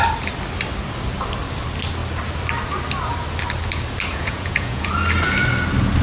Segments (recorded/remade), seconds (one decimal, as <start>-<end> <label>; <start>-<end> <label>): 0.0-4.1 recorded; 4.1-4.9 remade; 4.9-6.0 recorded